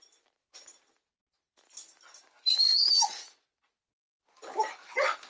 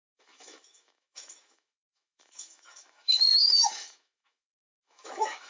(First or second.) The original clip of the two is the first